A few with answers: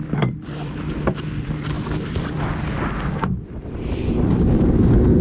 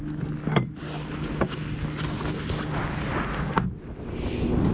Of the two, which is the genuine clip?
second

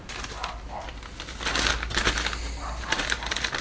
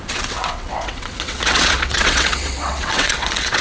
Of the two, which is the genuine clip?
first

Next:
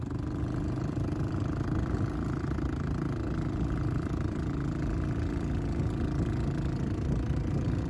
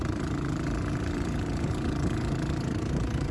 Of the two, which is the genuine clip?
first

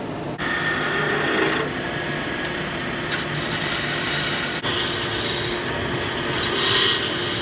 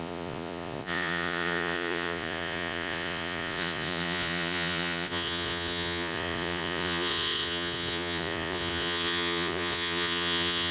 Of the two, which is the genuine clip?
first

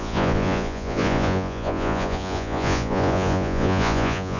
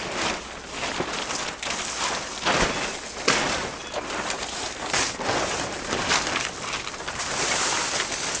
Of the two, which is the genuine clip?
second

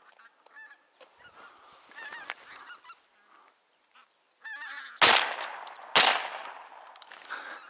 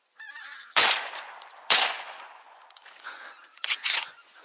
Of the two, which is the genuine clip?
first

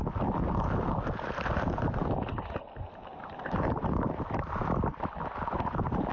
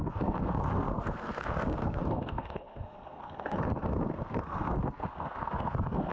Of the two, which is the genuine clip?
first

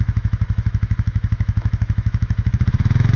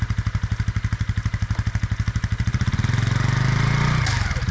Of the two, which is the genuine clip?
second